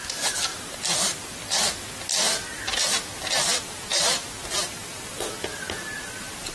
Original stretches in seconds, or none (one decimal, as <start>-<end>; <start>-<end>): 0.0-6.5